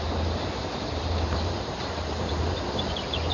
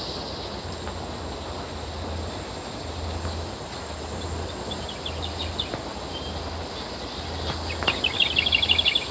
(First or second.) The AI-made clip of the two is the first